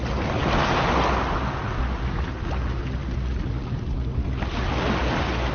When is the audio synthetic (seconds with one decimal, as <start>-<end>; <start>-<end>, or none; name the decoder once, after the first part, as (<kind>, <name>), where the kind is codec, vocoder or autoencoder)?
none